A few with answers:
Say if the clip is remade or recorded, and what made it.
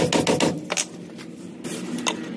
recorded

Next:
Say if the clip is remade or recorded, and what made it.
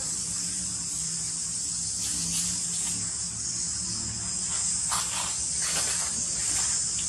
recorded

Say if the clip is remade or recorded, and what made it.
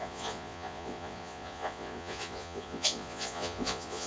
remade, vocoder, Vocos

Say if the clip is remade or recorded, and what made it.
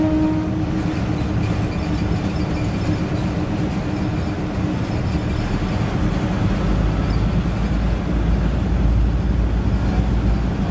recorded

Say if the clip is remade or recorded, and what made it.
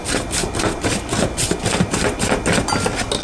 recorded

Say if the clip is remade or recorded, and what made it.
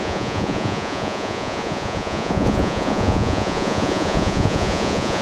remade, vocoder, Vocos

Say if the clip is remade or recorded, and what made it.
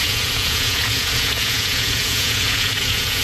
remade, vocoder, Vocos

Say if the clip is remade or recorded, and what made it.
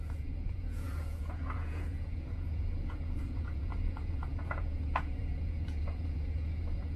remade, vocoder, Vocos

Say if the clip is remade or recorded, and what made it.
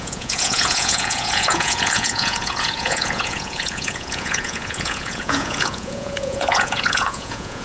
remade, vocoder, Vocos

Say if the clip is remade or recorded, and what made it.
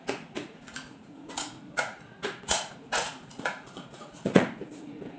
remade, vocoder, Vocos